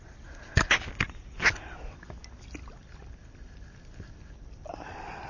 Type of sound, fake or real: real